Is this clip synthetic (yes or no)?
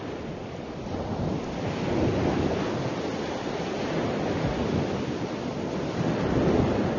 no